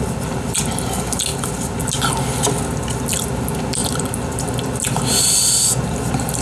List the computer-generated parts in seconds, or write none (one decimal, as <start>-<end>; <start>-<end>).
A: none